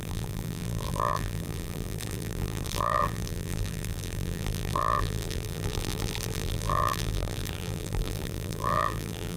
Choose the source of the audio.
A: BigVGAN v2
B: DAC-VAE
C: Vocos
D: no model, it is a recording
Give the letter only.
A